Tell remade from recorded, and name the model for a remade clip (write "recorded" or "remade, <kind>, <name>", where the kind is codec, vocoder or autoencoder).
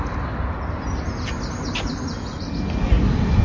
recorded